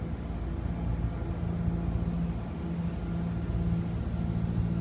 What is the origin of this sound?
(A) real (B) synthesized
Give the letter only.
A